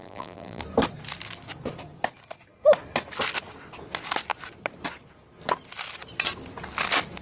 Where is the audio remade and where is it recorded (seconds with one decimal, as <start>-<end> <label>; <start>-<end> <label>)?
0.0-0.6 remade; 0.6-7.2 recorded